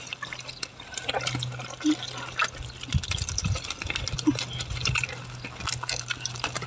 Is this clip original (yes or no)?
yes